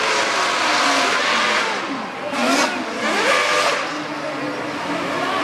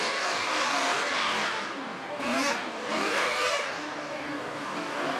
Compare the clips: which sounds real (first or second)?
first